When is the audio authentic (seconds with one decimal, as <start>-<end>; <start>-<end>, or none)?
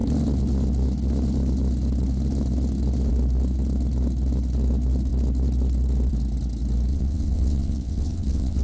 0.0-6.9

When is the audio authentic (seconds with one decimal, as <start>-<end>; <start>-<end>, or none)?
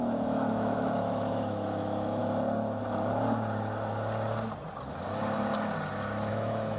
2.2-6.3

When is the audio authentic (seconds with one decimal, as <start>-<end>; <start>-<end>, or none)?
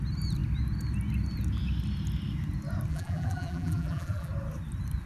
0.0-2.9; 4.3-5.1